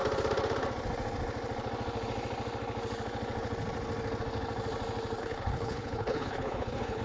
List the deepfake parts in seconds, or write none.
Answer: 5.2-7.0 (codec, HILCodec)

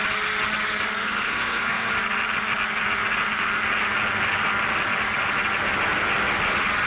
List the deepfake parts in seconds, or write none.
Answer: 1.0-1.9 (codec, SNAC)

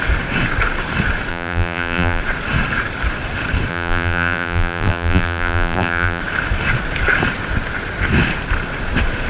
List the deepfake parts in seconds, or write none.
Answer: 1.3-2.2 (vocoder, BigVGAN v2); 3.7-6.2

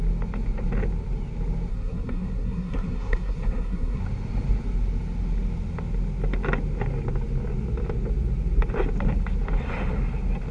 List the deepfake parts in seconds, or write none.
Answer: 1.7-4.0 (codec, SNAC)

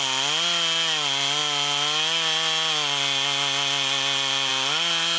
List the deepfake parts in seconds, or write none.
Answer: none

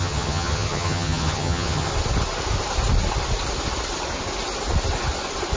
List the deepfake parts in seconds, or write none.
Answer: 0.0-1.9 (vocoder, HiFi-GAN)

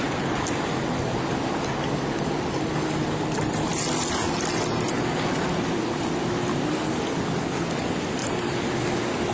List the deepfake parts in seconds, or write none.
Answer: none

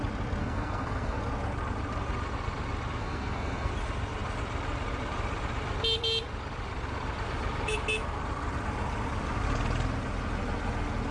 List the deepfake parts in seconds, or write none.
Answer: 0.4-1.2 (codec, SNAC); 3.0-3.7